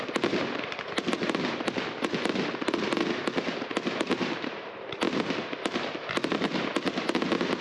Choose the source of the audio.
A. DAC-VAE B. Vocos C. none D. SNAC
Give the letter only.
C